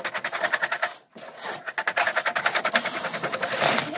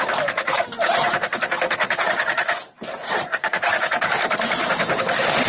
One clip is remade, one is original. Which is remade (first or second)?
second